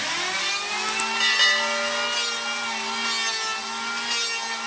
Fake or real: real